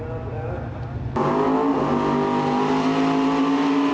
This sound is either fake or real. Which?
real